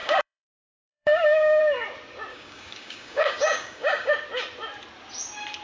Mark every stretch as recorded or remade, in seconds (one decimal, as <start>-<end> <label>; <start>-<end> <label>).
0.0-1.6 remade; 1.6-2.3 recorded; 2.3-4.1 remade; 4.1-5.6 recorded